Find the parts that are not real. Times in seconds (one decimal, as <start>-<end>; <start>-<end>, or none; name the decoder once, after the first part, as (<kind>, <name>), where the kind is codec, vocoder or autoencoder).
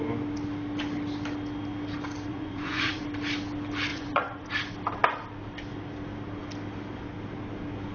2.3-3.0 (vocoder, Vocos); 3.9-4.5